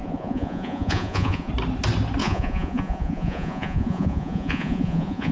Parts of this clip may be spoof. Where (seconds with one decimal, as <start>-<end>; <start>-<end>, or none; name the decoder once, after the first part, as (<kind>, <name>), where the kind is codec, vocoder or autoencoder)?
0.0-1.5 (vocoder, Vocos); 2.2-5.3